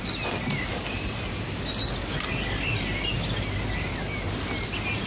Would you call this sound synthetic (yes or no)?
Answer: no